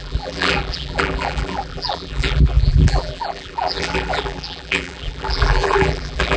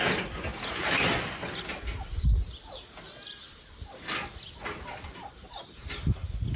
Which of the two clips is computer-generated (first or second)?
first